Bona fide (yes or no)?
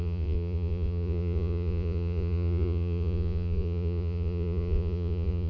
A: no